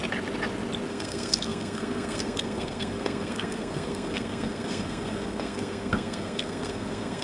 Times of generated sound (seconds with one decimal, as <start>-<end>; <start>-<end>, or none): 0.9-7.2